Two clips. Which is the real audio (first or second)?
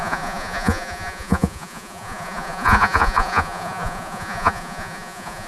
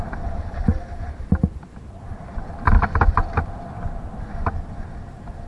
second